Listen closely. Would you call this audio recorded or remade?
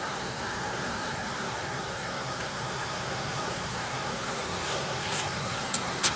remade